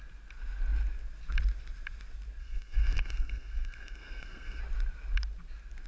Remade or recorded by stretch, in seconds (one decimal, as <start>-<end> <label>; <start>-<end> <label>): 0.0-2.4 recorded; 2.4-4.6 remade; 4.6-5.9 recorded